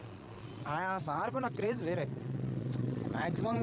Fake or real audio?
fake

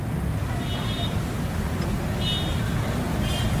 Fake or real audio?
real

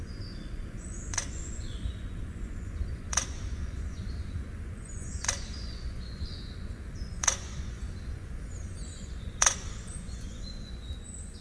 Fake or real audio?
fake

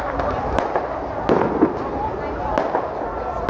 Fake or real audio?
real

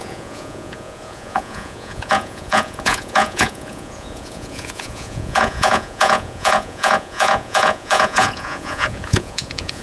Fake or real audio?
fake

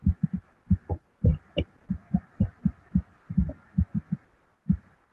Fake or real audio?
real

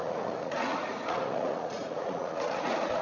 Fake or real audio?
fake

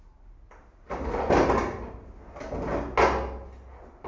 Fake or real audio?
real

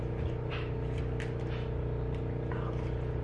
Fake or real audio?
real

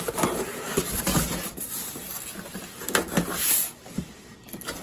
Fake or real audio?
real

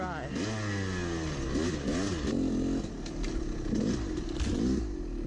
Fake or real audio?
real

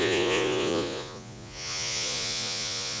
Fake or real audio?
fake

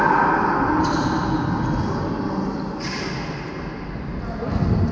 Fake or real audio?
real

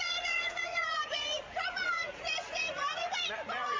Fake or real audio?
fake